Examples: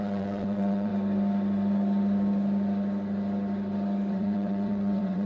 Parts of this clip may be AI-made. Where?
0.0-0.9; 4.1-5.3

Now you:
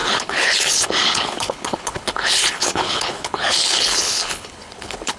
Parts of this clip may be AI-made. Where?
0.0-5.2

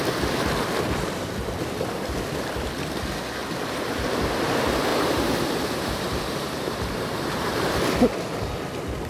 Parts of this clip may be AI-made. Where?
3.4-4.1; 4.9-7.8